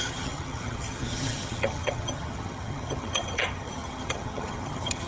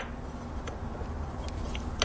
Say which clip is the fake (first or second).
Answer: first